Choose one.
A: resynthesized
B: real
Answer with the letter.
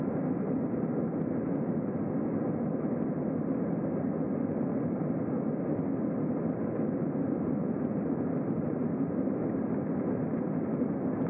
B